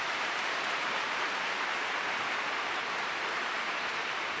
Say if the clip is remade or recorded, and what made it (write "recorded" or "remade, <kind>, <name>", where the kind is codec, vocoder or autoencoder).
remade, vocoder, BigVGAN v2